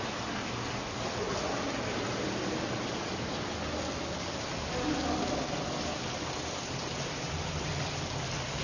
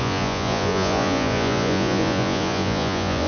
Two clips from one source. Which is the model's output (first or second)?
second